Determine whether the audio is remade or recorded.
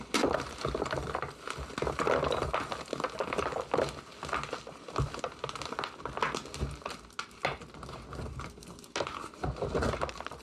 recorded